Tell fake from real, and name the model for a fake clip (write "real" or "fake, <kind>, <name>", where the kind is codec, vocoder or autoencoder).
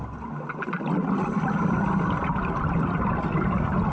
real